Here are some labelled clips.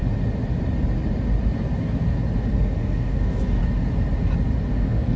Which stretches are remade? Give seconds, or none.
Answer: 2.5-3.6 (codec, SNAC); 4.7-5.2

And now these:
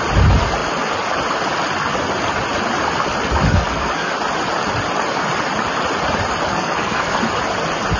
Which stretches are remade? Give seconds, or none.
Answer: 3.5-4.1 (codec, SNAC); 6.5-7.2

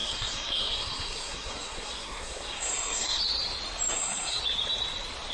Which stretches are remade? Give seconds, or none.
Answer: 0.0-3.2 (codec, SNAC); 3.9-4.4

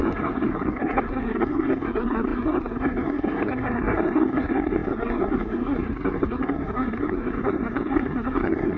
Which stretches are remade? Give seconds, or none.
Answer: 0.0-8.8 (codec, SNAC)

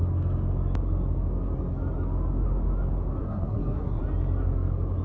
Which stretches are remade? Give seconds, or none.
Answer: 3.2-4.0 (codec, SNAC)